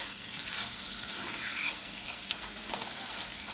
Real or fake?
fake